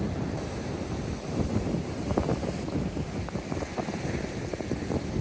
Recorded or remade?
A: recorded